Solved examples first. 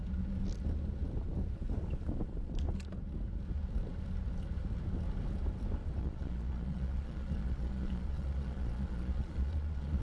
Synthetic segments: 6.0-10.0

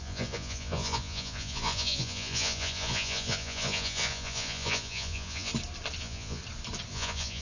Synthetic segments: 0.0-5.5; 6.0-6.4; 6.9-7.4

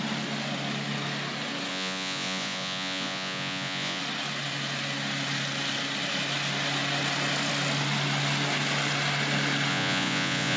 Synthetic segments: 1.7-4.0; 9.7-10.6

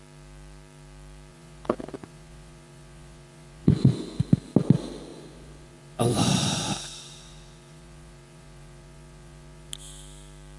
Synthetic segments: 1.3-4.2; 5.1-9.7

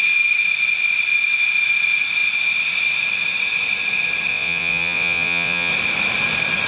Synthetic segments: 4.3-5.7